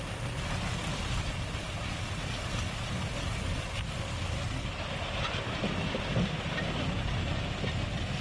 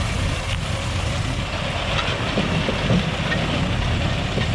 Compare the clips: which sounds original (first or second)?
second